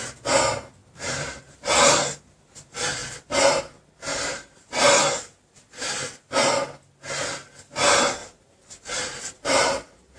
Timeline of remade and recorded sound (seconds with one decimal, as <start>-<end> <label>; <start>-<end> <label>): 0.0-0.8 recorded; 0.8-1.4 remade; 1.4-4.1 recorded; 4.1-4.7 remade; 4.7-8.2 recorded; 8.2-10.2 remade